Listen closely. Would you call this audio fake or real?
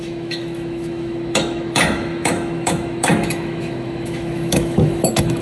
fake